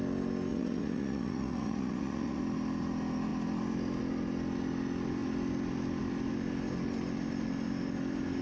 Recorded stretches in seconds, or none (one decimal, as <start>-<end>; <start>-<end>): 0.0-0.5; 2.4-8.4